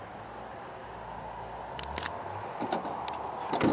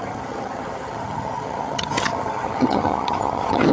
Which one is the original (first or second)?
first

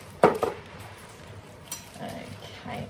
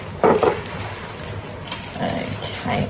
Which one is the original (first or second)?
second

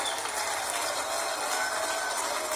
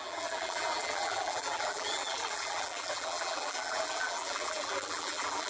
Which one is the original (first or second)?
first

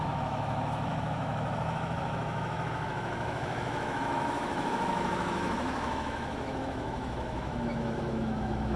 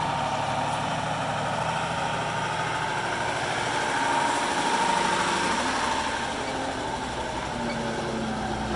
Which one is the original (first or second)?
second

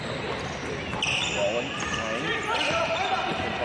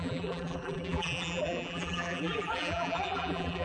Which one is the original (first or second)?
first